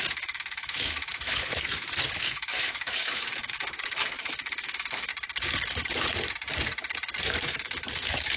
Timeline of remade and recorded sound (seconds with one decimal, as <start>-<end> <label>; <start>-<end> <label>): 0.0-5.1 remade; 5.1-7.4 recorded; 7.4-8.4 remade